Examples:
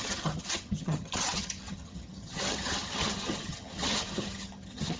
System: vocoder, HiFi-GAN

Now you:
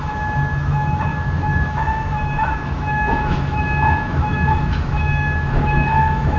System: autoencoder, DAC-VAE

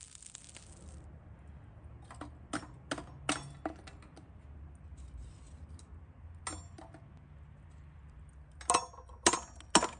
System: none